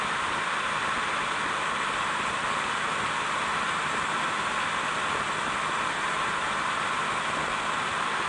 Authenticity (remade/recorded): recorded